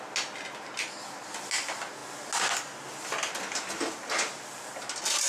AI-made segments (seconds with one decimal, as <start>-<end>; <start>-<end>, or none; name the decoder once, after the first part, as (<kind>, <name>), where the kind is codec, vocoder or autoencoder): none